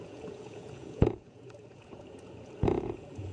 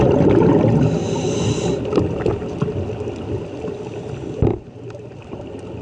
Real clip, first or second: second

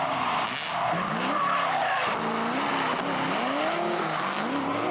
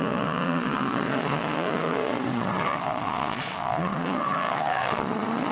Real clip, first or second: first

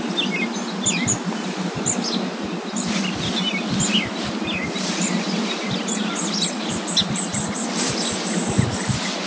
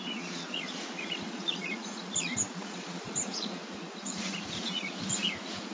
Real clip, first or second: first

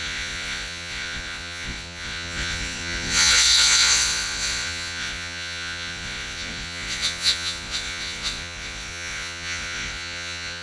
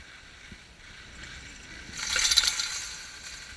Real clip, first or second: second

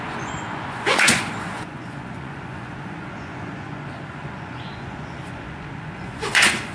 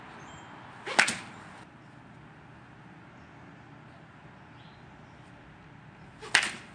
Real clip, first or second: second